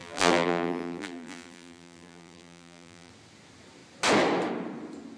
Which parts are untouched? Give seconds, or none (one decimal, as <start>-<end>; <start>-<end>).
3.1-5.2